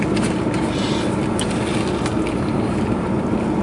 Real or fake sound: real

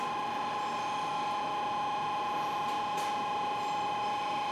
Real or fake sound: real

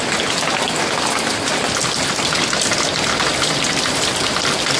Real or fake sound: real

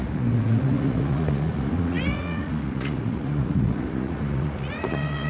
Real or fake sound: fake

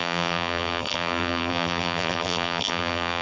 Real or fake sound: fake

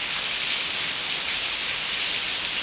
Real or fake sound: real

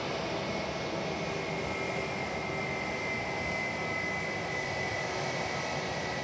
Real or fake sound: real